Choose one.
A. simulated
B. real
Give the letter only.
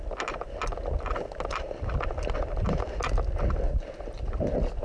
B